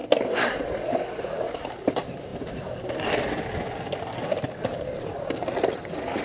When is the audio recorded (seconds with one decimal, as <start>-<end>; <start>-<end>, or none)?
0.0-6.2